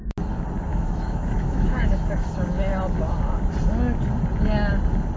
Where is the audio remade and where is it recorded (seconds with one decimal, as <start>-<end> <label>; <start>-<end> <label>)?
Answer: 0.0-0.7 recorded; 0.7-2.3 remade; 2.3-5.2 recorded

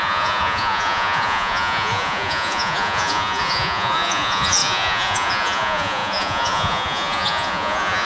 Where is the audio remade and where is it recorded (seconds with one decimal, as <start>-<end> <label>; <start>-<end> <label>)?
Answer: 0.0-8.1 remade

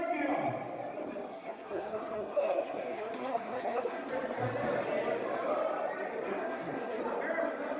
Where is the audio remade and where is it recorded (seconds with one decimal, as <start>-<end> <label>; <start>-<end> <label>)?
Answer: 0.0-1.3 recorded; 1.3-4.1 remade; 4.1-6.3 recorded; 6.3-7.0 remade; 7.0-7.8 recorded

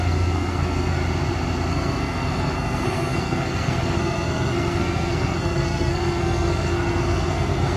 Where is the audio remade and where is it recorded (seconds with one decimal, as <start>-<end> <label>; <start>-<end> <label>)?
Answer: 0.0-1.0 remade; 1.0-1.7 recorded; 1.7-7.8 remade

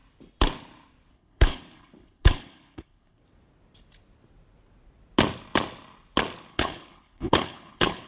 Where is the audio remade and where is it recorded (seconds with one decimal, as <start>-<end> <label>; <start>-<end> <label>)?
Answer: 0.0-1.1 recorded; 1.1-3.2 remade; 3.2-6.5 recorded; 6.5-8.1 remade

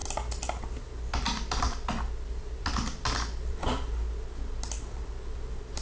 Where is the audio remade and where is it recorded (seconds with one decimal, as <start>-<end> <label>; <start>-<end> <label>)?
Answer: 0.0-5.8 recorded

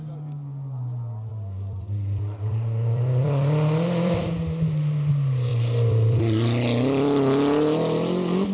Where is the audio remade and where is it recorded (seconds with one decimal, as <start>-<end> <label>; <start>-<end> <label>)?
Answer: 0.0-1.3 recorded; 1.3-4.3 remade; 4.3-5.5 recorded; 5.5-6.2 remade; 6.2-8.5 recorded